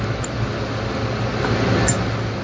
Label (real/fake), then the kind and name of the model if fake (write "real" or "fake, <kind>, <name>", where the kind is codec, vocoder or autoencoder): real